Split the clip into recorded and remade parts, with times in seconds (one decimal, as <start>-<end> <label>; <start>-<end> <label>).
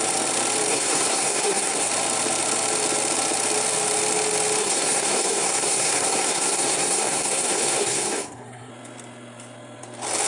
0.0-0.7 recorded; 0.7-1.9 remade; 1.9-4.6 recorded; 4.6-8.7 remade; 8.7-10.3 recorded